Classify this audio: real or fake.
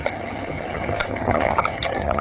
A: fake